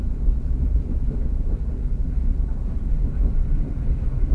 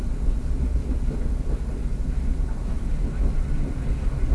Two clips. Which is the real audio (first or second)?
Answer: second